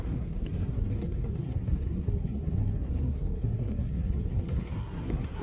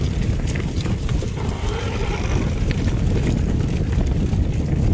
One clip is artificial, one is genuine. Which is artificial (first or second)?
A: first